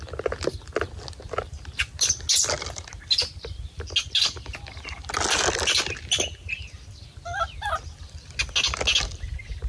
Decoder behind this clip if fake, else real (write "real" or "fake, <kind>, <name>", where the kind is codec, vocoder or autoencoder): real